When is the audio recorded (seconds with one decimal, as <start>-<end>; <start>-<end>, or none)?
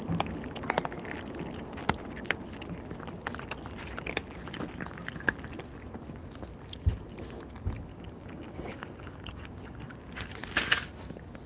0.0-7.9; 9.9-11.5